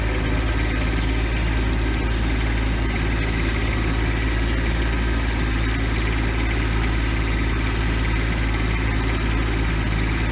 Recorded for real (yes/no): yes